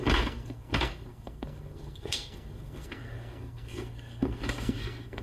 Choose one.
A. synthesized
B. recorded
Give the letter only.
A